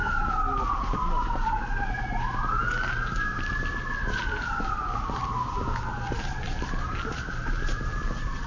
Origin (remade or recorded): recorded